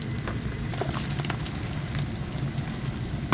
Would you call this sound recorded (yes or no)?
yes